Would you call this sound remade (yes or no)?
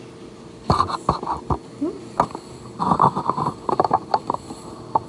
no